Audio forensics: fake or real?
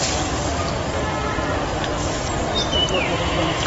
real